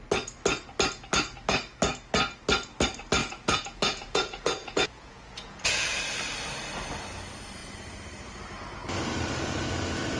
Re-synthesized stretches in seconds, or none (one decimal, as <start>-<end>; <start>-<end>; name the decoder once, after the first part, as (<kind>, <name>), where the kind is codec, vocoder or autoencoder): 3.2-6.0 (vocoder, Vocos)